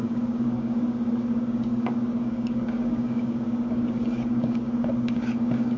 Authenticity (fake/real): fake